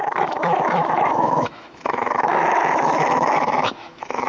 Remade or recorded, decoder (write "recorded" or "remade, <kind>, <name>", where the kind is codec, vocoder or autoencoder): remade, autoencoder, DAC-VAE